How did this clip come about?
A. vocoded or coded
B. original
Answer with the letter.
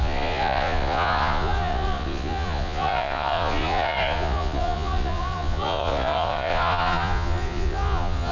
A